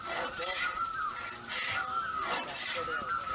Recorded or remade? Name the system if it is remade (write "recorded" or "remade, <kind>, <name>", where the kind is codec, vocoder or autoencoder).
recorded